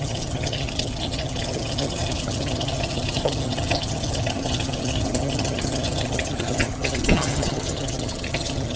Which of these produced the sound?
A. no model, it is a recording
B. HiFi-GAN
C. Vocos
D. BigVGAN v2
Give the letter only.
B